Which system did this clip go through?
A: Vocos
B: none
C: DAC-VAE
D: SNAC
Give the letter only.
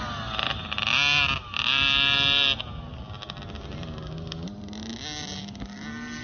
B